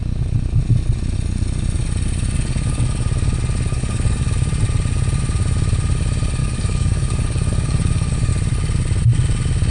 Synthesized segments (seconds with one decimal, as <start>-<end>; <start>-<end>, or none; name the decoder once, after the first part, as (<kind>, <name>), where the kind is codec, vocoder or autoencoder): 3.7-4.3 (codec, DAC); 6.4-8.3